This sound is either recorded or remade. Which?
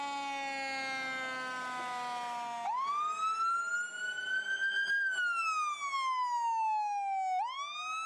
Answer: recorded